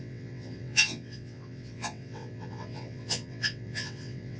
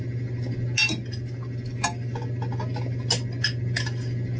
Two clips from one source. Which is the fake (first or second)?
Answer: first